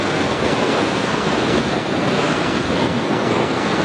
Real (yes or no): no